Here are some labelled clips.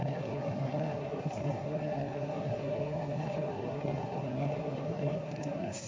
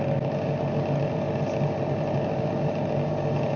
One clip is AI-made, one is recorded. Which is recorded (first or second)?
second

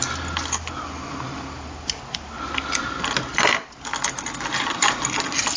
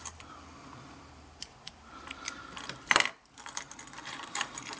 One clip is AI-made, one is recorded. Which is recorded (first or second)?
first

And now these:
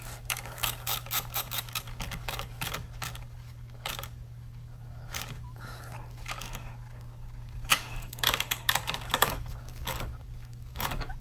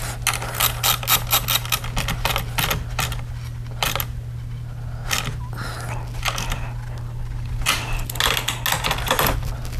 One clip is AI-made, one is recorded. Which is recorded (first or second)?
second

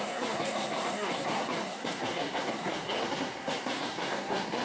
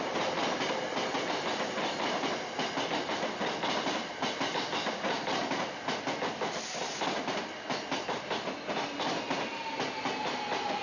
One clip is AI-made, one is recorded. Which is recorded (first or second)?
second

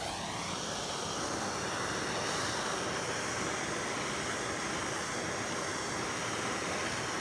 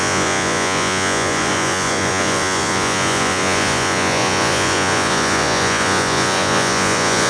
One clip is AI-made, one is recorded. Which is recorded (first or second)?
first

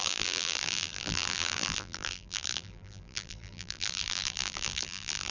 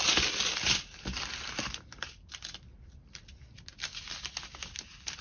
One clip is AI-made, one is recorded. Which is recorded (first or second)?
second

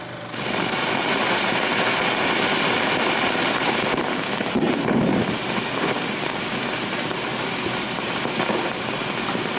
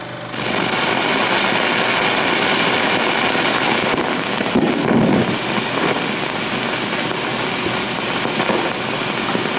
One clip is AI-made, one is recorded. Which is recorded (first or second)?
second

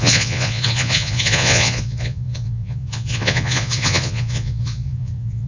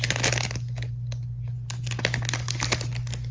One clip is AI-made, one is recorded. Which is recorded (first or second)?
second